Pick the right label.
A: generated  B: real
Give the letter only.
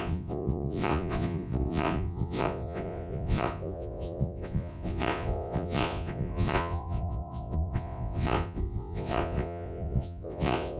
A